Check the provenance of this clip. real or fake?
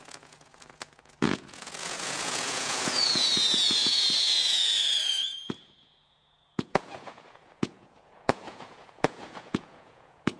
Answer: fake